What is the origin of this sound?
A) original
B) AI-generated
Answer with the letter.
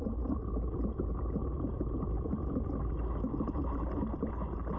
A